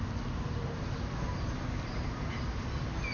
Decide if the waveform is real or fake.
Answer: real